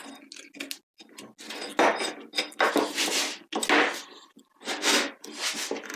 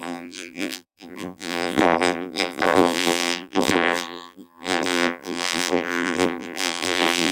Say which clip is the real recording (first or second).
first